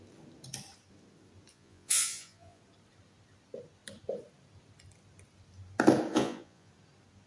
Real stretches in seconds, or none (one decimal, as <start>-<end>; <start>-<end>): 0.0-1.5; 2.6-6.1; 6.7-7.3